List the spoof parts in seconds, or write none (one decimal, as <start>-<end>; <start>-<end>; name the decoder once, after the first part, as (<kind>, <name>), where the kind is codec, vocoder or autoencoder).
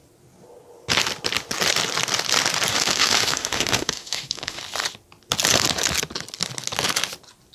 2.7-4.6 (autoencoder, DAC-VAE)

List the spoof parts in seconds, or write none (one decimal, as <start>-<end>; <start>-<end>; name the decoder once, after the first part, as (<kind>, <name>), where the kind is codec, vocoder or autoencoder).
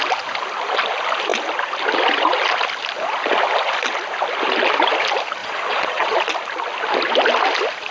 5.4-6.2 (vocoder, Vocos)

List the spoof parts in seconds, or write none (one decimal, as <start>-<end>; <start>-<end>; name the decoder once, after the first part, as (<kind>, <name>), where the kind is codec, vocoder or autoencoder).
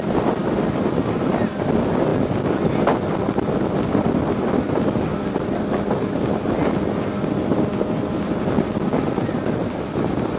none